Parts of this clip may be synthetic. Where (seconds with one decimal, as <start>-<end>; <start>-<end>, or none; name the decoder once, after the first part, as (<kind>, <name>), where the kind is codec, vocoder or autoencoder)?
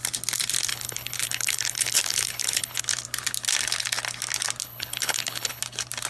0.7-2.8 (codec, HILCodec); 4.6-5.6